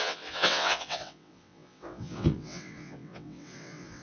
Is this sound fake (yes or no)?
yes